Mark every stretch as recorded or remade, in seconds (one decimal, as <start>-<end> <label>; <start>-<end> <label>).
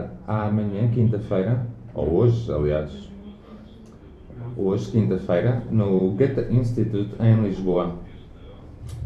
0.0-1.6 remade; 1.6-4.0 recorded; 4.0-6.0 remade; 6.0-7.5 recorded; 7.5-9.1 remade